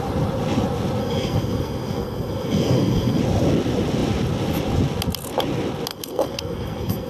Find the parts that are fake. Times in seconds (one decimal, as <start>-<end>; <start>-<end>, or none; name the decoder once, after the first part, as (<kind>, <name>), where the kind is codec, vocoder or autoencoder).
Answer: 1.0-3.2 (codec, SNAC); 5.9-7.1